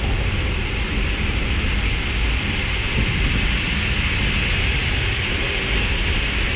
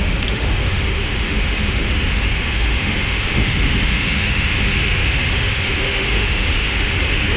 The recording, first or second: first